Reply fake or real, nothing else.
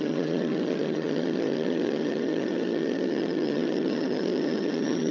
fake